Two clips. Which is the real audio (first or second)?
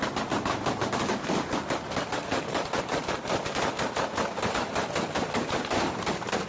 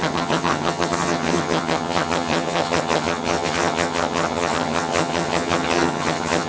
first